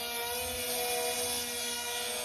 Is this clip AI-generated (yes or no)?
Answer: no